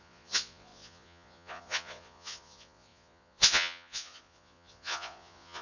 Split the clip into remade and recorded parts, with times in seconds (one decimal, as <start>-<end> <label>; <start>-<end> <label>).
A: 0.0-5.6 remade